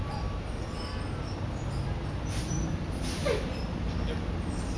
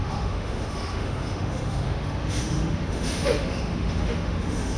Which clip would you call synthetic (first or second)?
second